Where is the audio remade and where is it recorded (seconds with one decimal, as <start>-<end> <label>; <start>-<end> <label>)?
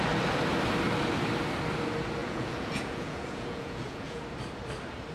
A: 0.0-2.2 recorded; 2.2-4.2 remade; 4.2-5.1 recorded